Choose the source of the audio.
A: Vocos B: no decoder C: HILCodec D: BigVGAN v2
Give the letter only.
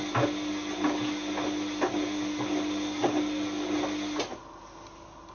B